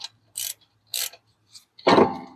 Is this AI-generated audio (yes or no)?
yes